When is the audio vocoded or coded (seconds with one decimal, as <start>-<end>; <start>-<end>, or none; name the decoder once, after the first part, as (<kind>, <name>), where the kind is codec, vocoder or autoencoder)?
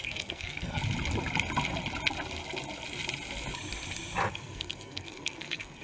0.0-0.8 (codec, SNAC); 4.3-5.8